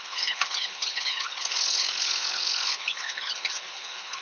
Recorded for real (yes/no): no